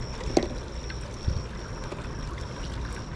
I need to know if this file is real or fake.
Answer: real